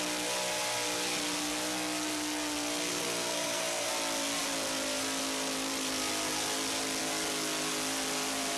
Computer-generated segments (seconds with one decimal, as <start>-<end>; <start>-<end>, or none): 2.9-3.9